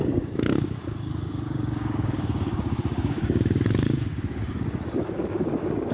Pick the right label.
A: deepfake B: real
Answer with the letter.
A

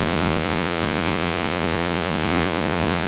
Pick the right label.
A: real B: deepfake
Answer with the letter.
B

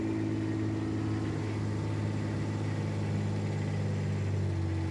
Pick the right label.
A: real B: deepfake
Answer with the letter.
A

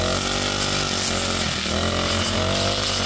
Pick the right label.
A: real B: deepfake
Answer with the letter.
A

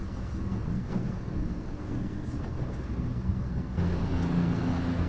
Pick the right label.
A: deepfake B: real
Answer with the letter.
A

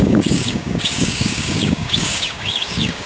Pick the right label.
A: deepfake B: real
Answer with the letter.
A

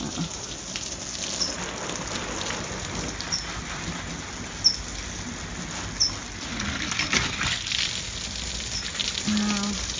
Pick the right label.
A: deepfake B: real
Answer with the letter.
B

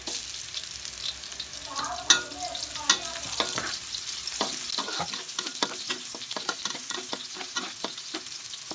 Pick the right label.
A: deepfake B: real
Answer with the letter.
B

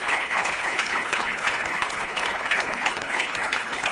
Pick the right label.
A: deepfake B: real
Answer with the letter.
A